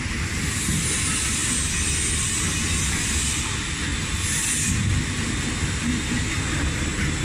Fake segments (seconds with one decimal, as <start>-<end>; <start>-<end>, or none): none